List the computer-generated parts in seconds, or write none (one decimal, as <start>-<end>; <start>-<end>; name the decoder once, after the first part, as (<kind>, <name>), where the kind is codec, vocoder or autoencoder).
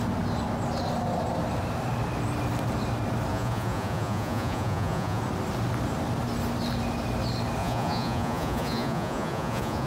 3.3-5.2 (vocoder, Vocos); 7.6-9.9